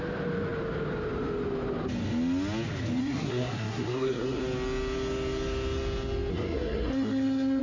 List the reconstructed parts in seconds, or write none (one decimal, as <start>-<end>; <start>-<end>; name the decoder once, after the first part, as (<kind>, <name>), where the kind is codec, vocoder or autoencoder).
3.0-4.4 (codec, SNAC); 6.3-7.6